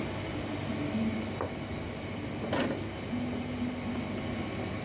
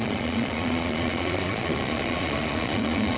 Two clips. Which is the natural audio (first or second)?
first